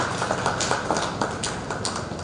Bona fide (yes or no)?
yes